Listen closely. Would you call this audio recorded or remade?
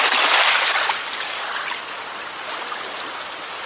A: recorded